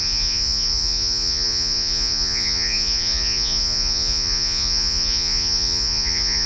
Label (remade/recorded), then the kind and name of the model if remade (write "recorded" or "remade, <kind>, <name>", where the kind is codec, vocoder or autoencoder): remade, vocoder, Vocos